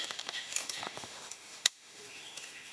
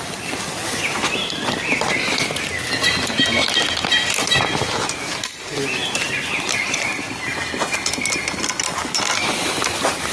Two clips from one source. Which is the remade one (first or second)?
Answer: first